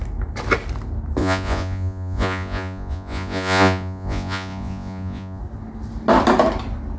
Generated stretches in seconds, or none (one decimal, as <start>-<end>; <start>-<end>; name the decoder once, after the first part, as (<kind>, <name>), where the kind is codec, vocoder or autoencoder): 1.2-5.4 (vocoder, Vocos)